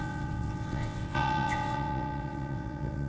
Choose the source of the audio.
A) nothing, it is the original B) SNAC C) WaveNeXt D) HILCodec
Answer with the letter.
C